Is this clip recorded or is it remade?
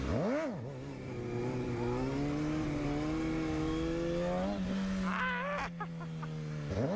recorded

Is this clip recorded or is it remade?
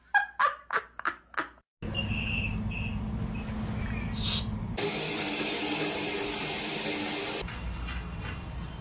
recorded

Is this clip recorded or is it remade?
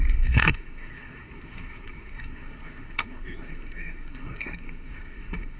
remade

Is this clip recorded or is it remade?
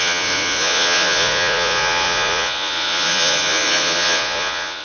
remade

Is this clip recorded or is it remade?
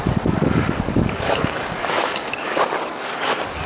remade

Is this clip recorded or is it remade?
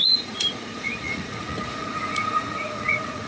remade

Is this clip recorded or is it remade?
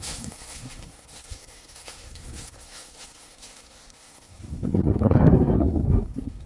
remade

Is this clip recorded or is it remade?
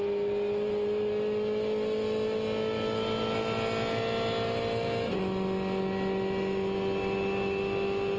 recorded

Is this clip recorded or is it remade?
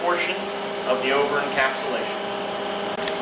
recorded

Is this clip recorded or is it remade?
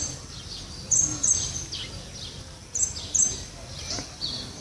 recorded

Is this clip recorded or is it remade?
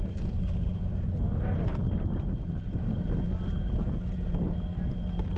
recorded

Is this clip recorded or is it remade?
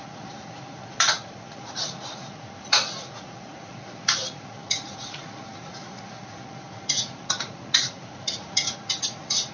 remade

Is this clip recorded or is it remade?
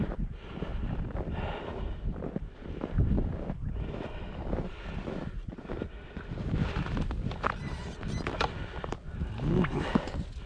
recorded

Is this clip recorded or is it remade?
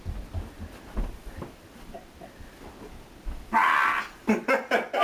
recorded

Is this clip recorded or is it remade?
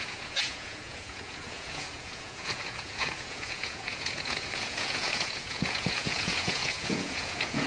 remade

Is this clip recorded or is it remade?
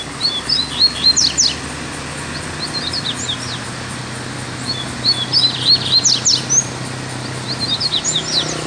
recorded